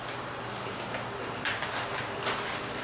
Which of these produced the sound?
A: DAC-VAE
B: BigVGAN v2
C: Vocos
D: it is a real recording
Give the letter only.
B